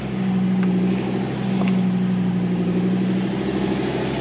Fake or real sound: real